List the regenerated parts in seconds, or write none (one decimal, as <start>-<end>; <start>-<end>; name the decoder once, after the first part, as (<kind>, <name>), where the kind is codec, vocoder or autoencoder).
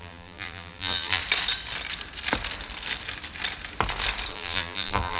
0.0-1.2 (vocoder, BigVGAN v2); 4.3-5.2